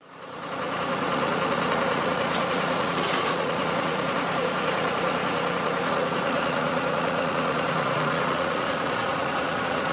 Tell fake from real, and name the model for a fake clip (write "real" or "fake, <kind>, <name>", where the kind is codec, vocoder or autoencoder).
fake, vocoder, Vocos